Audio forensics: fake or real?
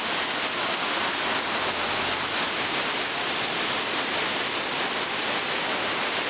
real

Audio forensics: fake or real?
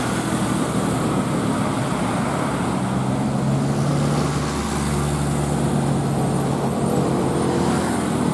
real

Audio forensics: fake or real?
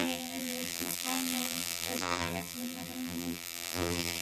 fake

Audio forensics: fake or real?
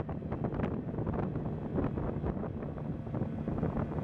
real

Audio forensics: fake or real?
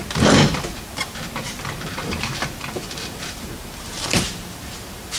fake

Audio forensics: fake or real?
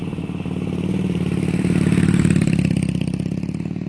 fake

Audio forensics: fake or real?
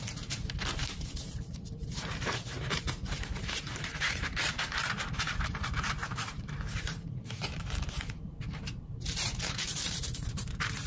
fake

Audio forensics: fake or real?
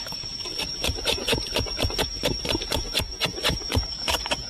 fake